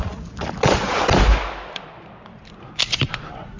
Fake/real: real